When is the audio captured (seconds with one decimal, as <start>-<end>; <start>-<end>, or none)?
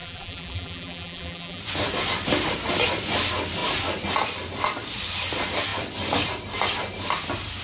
1.6-7.6